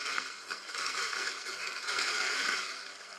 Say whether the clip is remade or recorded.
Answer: remade